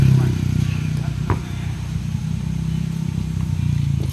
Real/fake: real